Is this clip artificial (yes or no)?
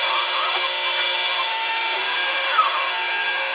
yes